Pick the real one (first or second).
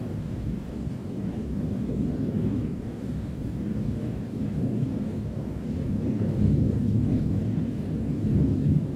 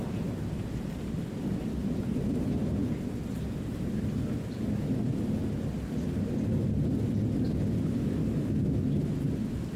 second